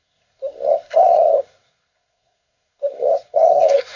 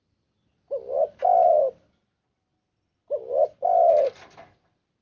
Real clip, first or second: second